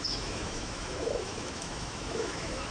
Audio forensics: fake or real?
fake